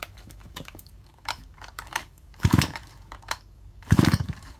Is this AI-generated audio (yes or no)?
yes